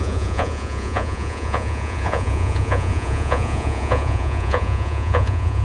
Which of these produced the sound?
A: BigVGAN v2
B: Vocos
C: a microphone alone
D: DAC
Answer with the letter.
B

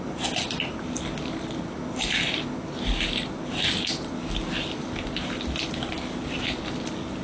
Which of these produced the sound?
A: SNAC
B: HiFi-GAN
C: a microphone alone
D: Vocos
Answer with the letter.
C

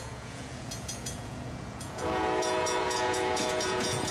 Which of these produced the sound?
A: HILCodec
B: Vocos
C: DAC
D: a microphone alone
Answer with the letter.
B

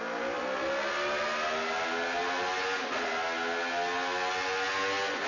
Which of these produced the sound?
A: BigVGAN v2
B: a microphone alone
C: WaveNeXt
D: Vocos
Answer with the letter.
B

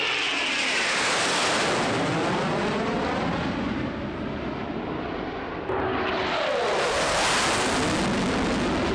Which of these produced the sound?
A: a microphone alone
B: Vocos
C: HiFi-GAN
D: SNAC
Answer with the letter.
A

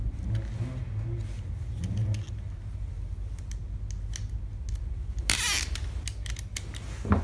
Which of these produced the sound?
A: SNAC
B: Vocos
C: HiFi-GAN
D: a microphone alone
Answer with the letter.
D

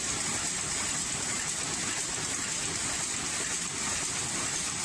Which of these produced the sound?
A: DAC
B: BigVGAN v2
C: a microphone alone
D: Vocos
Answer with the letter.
C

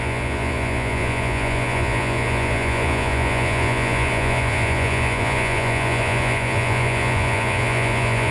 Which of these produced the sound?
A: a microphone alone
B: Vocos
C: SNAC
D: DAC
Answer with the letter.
B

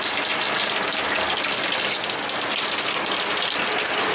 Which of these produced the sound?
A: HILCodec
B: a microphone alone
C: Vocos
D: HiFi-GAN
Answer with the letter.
B